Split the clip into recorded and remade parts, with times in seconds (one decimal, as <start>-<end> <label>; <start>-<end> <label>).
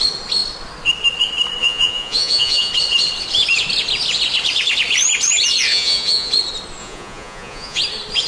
0.0-1.6 recorded; 1.6-2.7 remade; 2.7-5.7 recorded; 5.7-6.3 remade; 6.3-6.8 recorded; 6.8-7.8 remade; 7.8-8.3 recorded